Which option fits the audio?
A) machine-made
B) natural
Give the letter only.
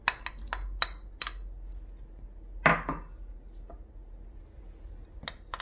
B